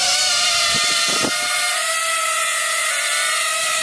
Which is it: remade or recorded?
remade